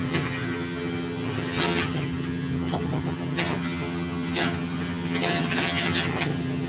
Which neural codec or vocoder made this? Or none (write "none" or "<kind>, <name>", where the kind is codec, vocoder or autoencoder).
vocoder, HiFi-GAN